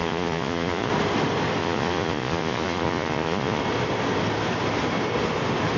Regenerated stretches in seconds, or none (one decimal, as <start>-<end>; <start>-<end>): 0.0-0.9; 1.6-3.6